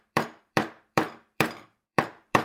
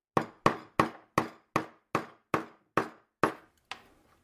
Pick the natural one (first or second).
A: second